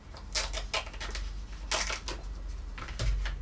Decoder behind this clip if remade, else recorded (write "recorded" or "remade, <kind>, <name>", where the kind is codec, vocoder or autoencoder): recorded